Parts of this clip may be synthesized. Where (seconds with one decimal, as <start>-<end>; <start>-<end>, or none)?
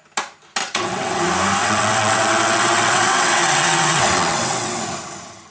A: 0.6-1.2; 1.6-4.8